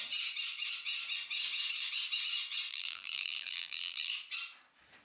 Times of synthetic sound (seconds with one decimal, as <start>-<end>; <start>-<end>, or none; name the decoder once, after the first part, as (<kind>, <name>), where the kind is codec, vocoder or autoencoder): 2.7-4.1 (vocoder, BigVGAN v2)